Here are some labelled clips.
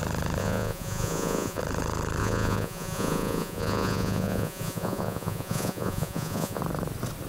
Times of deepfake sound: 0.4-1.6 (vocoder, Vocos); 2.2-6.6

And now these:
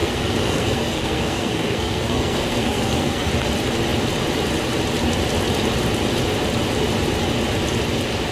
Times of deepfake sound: 0.0-3.3 (codec, SNAC)

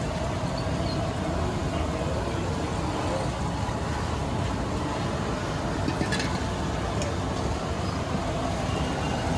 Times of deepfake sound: 1.6-2.8 (vocoder, BigVGAN v2)

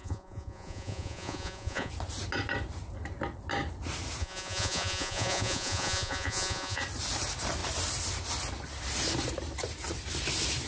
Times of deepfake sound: 0.0-1.9 (vocoder, Vocos); 4.2-6.8

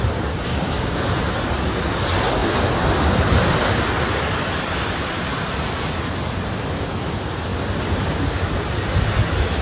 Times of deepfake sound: 0.5-1.2 (codec, DAC)